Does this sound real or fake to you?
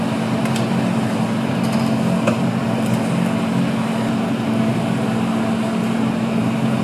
real